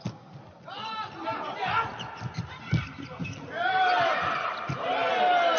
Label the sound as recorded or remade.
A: recorded